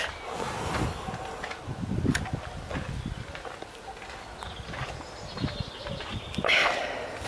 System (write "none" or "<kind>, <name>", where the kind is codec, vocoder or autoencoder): none